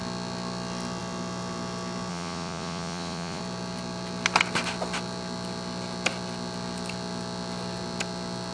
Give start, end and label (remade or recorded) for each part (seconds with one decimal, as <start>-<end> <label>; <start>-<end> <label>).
0.0-2.1 recorded; 2.1-3.4 remade; 3.4-8.5 recorded